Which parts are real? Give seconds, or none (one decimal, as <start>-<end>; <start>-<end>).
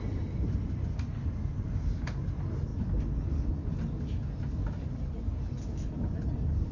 0.0-6.7